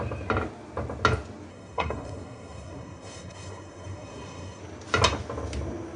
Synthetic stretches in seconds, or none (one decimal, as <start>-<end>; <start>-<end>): 1.5-4.6